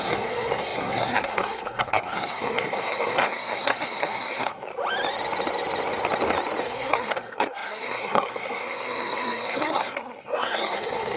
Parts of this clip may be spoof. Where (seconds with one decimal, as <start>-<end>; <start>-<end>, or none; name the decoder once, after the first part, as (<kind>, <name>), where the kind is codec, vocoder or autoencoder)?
0.0-4.7 (codec, SNAC); 6.6-11.2